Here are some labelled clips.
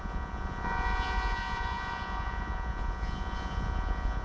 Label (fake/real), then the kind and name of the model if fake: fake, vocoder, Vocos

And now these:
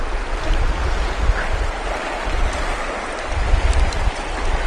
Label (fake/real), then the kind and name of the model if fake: real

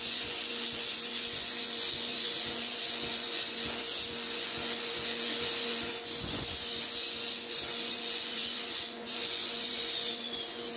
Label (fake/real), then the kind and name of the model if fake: fake, vocoder, Vocos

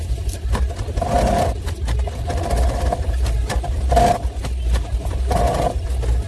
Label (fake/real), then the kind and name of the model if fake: real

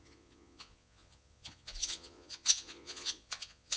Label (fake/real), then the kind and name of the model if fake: fake, vocoder, Vocos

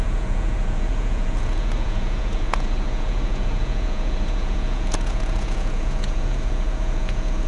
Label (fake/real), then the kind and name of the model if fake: fake, vocoder, Vocos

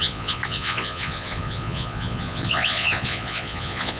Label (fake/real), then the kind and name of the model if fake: fake, vocoder, Vocos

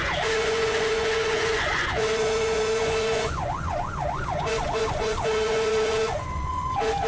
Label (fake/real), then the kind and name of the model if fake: fake, vocoder, Vocos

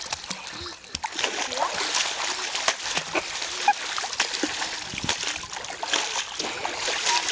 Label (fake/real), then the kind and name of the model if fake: real